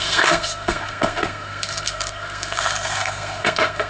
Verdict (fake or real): fake